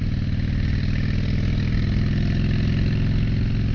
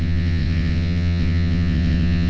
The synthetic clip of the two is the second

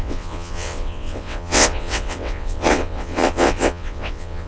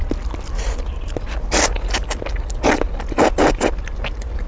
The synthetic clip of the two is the first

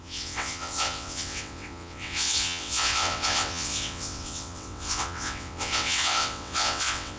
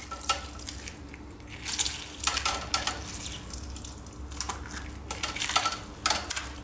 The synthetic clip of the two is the first